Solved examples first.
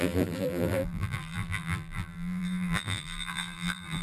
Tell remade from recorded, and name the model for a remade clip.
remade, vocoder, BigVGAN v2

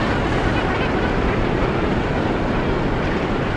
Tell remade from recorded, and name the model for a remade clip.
recorded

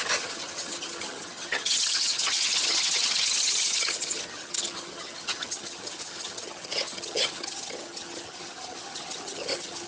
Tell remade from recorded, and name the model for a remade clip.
remade, vocoder, HiFi-GAN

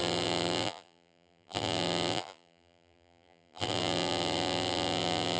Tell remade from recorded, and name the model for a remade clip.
remade, vocoder, BigVGAN v2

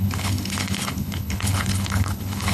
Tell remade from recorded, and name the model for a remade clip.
remade, codec, HILCodec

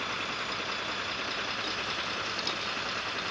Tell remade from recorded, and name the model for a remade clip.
recorded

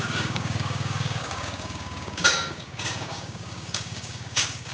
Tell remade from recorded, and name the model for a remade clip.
remade, codec, DAC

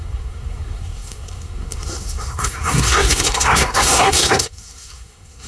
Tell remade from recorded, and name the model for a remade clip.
remade, codec, SNAC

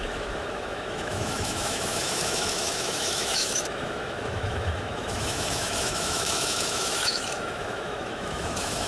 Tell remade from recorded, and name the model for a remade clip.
remade, autoencoder, DAC-VAE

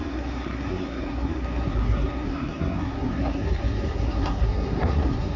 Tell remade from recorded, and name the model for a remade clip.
remade, codec, SNAC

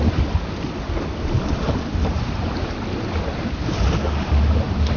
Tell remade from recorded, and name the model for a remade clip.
recorded